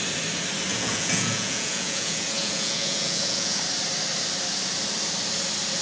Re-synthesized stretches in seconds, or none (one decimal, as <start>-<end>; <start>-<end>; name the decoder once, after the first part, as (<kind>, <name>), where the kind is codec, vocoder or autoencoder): 0.7-3.6 (vocoder, Vocos)